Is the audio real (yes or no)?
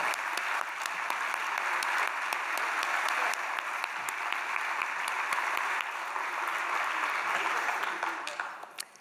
yes